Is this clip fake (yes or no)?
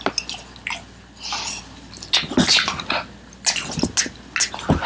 no